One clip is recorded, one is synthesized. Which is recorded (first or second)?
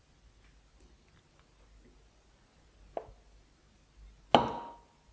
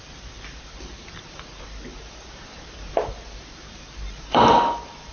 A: first